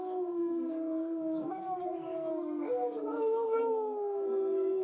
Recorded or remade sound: remade